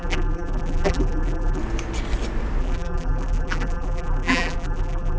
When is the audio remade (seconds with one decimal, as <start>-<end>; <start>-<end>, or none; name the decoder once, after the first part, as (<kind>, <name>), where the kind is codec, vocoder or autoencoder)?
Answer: 0.0-1.6 (vocoder, BigVGAN v2); 2.6-5.2